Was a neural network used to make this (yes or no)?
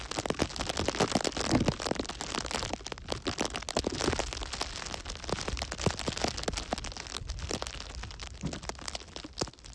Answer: no